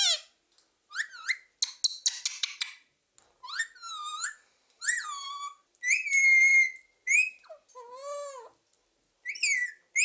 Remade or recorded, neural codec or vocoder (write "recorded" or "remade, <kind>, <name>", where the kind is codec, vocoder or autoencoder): recorded